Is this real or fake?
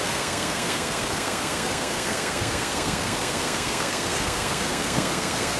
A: fake